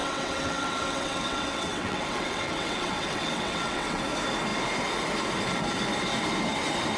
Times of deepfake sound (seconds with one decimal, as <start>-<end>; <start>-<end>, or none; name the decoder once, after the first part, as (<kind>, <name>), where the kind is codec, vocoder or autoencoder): 0.0-4.0 (vocoder, WaveNeXt)